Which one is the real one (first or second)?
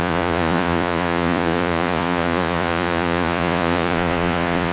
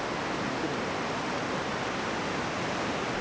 second